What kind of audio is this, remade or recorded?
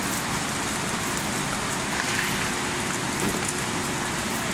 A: recorded